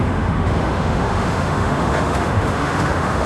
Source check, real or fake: fake